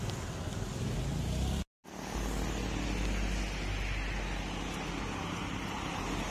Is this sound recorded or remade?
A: recorded